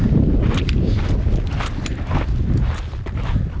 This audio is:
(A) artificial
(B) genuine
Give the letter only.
B